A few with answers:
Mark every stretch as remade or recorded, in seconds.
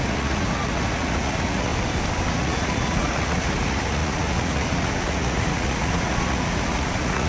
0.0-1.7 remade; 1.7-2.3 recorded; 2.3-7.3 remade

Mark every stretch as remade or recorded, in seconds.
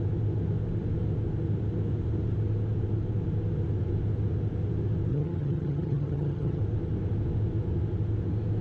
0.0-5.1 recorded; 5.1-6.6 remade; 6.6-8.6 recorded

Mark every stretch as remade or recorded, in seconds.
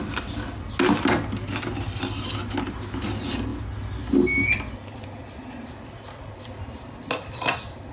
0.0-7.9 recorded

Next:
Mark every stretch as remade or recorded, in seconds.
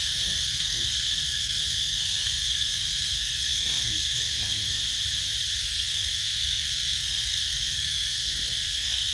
0.0-4.8 remade; 4.8-5.6 recorded; 5.6-9.1 remade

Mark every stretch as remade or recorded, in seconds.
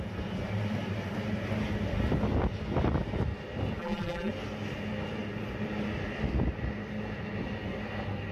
0.0-3.8 recorded; 3.8-4.3 remade; 4.3-8.3 recorded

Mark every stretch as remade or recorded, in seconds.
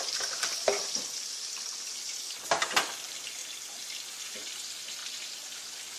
0.0-6.0 recorded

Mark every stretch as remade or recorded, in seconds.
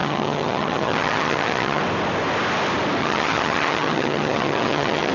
0.0-1.8 remade; 1.8-3.0 recorded; 3.0-5.1 remade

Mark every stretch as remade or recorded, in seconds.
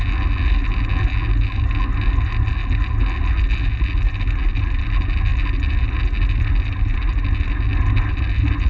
0.0-8.7 recorded